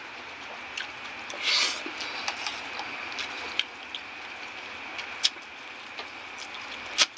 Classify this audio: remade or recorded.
recorded